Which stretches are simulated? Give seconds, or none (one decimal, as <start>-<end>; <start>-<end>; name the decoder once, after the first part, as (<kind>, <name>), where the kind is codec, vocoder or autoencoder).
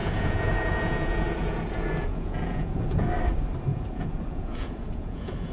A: 0.0-3.1 (vocoder, Vocos); 3.7-5.5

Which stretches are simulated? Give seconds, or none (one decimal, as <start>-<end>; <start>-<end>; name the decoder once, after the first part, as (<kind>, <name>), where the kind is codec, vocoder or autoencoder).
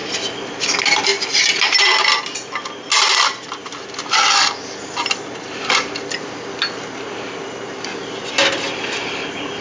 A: none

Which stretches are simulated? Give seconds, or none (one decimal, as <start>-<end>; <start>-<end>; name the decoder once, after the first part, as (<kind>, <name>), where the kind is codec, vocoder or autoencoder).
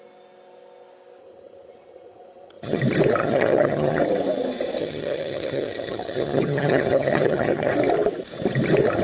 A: 1.2-2.8 (vocoder, HiFi-GAN); 3.2-4.0; 4.8-7.7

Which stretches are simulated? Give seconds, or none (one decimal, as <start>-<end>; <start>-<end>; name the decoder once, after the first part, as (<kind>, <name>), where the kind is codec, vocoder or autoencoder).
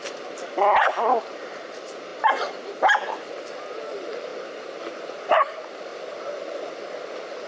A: none